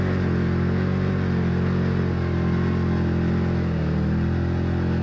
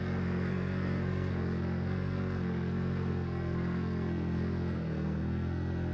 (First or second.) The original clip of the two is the first